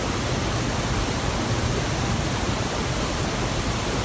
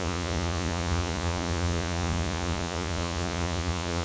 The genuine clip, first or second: first